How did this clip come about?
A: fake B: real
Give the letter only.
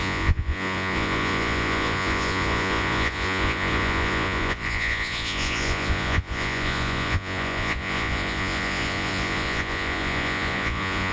A